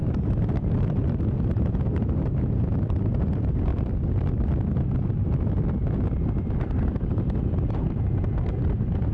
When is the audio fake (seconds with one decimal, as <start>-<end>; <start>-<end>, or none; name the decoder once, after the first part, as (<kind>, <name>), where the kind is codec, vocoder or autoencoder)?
0.0-3.7 (vocoder, BigVGAN v2); 7.4-9.1